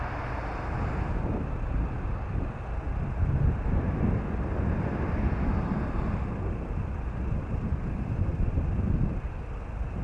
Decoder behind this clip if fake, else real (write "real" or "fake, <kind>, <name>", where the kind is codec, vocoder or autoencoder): real